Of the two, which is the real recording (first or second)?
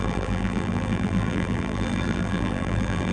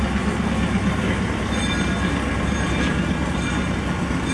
second